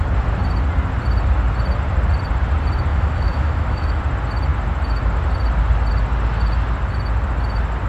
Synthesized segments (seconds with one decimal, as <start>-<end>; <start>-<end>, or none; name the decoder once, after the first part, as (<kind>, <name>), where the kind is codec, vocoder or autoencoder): 2.9-4.0 (autoencoder, DAC-VAE)